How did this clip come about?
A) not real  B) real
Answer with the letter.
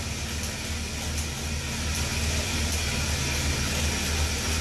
B